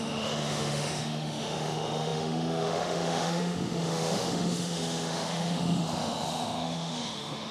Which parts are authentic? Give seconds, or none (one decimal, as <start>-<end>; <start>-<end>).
none